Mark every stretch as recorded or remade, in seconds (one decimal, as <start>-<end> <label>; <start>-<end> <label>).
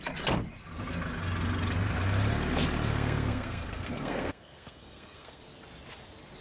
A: 0.0-2.9 recorded; 2.9-5.4 remade; 5.4-6.4 recorded